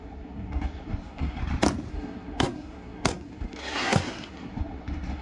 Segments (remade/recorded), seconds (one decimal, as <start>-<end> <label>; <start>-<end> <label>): 0.0-1.4 remade; 1.4-1.9 recorded; 1.9-5.2 remade